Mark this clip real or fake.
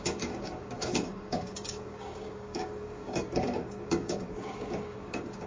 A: fake